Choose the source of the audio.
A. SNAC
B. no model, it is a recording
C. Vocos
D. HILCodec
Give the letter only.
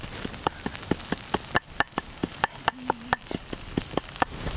B